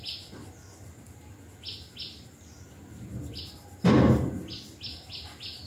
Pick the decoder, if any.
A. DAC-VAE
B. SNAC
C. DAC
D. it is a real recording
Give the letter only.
D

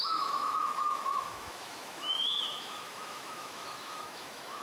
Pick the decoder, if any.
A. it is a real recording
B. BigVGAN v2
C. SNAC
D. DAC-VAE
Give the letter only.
D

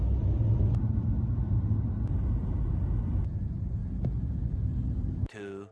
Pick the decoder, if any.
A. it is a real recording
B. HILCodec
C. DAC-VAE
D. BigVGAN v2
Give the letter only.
A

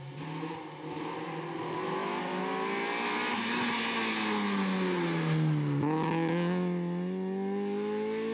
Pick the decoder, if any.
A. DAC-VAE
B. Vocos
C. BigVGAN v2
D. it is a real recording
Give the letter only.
D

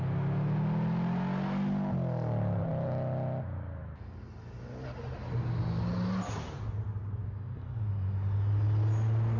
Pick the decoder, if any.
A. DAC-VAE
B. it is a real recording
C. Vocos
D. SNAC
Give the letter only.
B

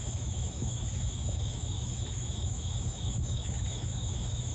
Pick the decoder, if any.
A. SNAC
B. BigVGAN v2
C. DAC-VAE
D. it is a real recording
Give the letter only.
C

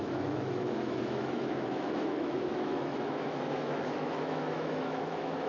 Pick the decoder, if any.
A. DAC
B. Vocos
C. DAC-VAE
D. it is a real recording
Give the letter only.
C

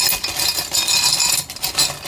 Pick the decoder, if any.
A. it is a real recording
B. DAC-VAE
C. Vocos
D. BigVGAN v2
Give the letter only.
A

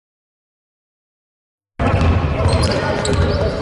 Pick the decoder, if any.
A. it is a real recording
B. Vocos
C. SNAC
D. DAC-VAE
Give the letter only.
A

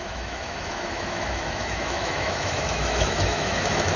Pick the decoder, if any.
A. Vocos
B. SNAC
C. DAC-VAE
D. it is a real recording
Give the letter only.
C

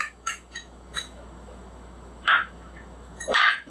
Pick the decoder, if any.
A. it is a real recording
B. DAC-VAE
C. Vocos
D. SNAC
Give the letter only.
B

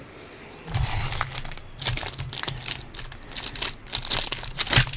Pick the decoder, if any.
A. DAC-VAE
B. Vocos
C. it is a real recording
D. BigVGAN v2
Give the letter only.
C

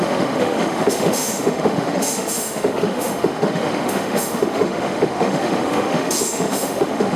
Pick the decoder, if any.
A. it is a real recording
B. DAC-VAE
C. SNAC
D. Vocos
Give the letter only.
B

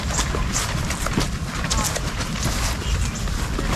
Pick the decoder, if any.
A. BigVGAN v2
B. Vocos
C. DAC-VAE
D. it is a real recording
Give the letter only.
D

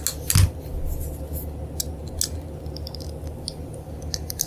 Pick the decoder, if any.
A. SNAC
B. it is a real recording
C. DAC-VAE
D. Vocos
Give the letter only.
B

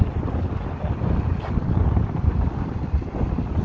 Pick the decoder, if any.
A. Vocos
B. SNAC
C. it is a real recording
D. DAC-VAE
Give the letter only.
C